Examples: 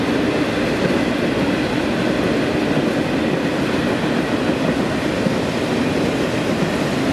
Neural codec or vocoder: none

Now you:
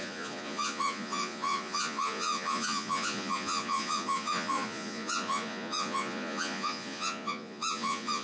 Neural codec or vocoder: vocoder, Vocos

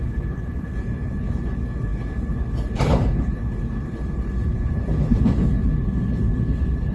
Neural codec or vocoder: codec, HILCodec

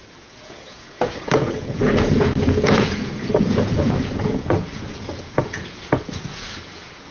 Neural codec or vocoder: vocoder, Vocos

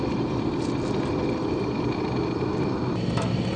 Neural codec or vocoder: none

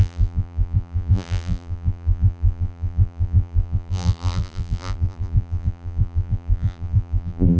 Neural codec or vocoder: vocoder, BigVGAN v2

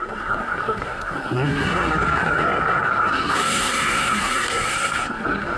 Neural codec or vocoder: codec, SNAC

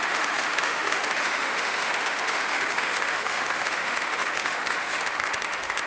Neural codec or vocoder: autoencoder, DAC-VAE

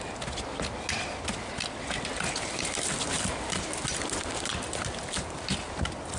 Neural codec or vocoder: none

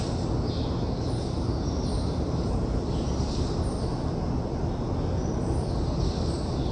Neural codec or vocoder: none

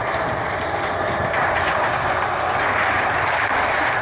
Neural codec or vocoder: none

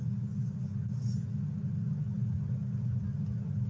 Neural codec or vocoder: none